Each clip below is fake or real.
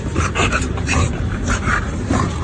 fake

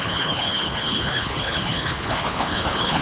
fake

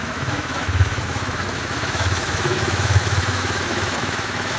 fake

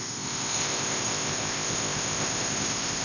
fake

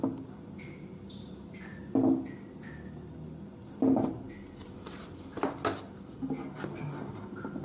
real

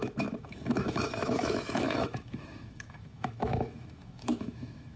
fake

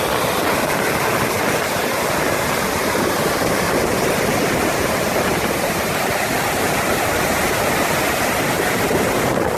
real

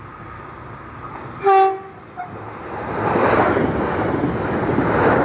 real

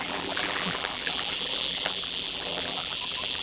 fake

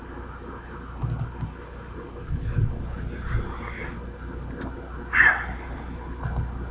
real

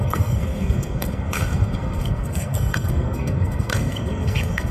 fake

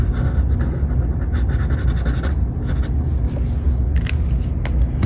real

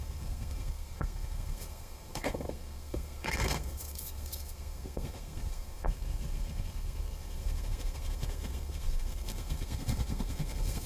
fake